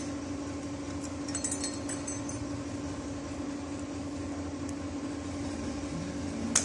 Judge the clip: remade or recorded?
recorded